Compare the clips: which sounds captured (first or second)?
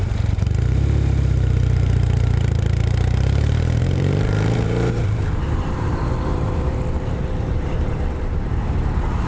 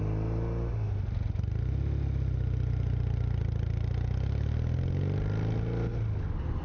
second